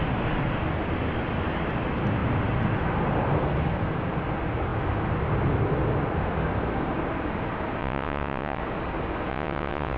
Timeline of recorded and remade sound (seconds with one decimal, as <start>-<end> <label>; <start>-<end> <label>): 0.0-7.8 recorded; 7.8-8.6 remade; 8.6-9.3 recorded; 9.3-10.0 remade